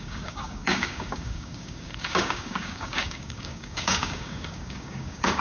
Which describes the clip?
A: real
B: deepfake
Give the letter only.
B